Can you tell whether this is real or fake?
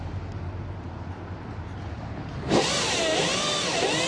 real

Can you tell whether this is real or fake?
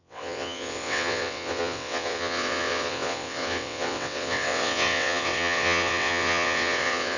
fake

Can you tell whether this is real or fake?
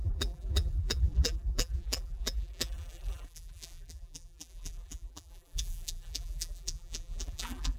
fake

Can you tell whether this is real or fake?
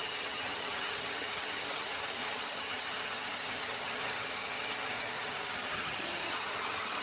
fake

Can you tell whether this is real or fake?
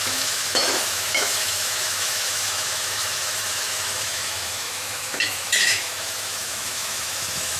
fake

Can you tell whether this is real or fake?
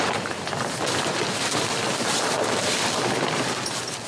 real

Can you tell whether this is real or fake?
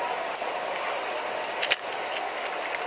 real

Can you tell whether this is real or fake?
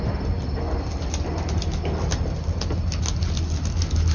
real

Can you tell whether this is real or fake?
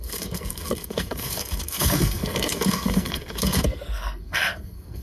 fake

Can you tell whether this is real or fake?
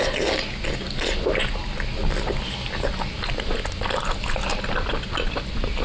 real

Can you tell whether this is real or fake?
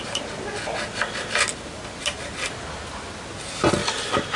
real